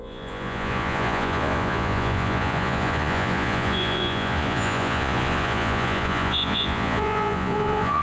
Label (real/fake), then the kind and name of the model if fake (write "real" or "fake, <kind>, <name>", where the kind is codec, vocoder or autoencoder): fake, vocoder, Vocos